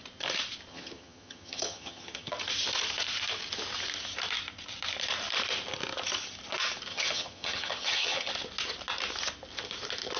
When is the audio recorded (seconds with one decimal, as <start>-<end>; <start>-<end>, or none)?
0.0-0.7; 2.3-6.9; 8.3-10.2